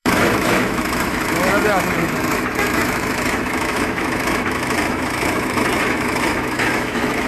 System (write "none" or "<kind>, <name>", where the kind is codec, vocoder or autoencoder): autoencoder, DAC-VAE